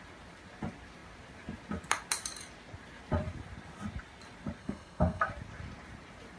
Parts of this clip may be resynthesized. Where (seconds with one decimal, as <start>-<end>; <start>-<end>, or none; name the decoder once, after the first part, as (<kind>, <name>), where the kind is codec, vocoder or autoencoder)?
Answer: 4.6-5.3 (codec, SNAC)